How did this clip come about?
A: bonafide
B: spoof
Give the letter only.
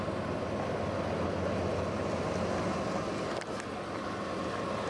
A